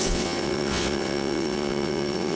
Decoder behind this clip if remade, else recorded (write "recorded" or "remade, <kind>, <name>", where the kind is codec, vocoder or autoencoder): remade, vocoder, WaveNeXt